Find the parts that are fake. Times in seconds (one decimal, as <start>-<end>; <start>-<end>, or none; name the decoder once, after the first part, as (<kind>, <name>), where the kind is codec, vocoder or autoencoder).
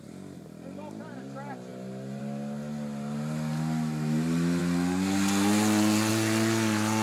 none